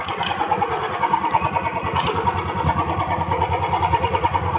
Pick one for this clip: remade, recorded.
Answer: remade